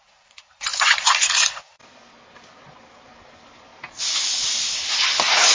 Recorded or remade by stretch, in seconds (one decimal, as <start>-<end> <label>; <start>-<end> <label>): 0.0-5.5 recorded